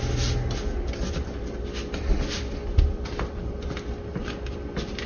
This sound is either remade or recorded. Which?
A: recorded